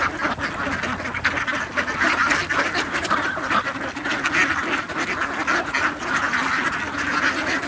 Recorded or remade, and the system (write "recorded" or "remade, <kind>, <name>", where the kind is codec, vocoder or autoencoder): recorded